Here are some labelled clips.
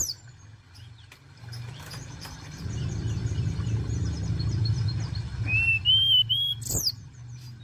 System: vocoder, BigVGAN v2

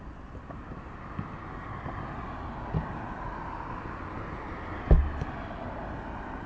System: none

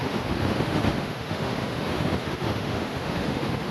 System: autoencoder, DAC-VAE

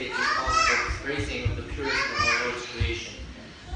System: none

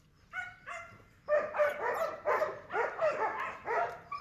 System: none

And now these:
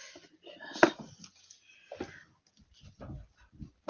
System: none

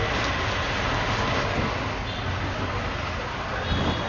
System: none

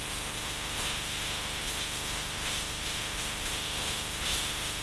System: autoencoder, DAC-VAE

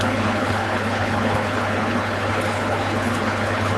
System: codec, HILCodec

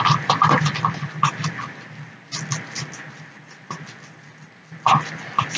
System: none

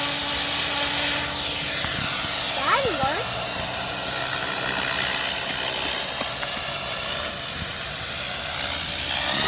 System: none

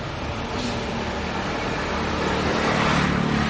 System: none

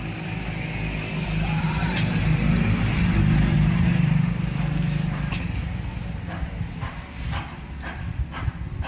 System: none